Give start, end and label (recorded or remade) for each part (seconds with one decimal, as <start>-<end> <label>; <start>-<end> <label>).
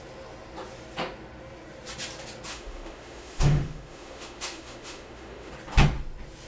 0.0-2.5 recorded; 2.5-5.5 remade; 5.5-6.5 recorded